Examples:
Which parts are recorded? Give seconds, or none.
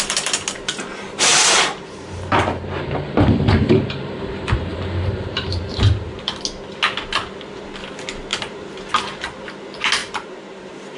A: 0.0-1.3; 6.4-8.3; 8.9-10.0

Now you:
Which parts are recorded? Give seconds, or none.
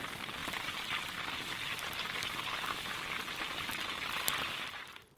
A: 0.0-5.2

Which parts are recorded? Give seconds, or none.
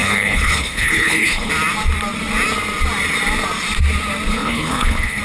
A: 1.5-4.3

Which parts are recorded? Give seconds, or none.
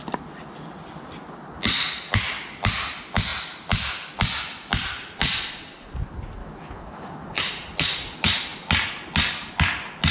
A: 0.0-6.4; 7.4-10.1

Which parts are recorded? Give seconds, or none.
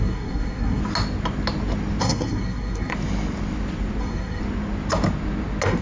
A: 0.8-2.0; 2.9-4.0; 4.4-5.8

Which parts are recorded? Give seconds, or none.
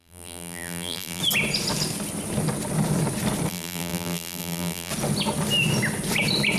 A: 1.2-3.5; 4.9-6.6